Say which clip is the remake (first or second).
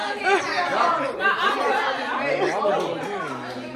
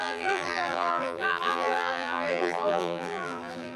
second